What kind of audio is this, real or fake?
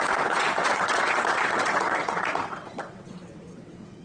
fake